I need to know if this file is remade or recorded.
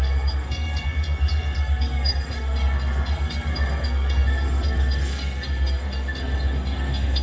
remade